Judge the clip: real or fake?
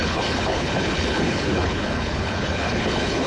fake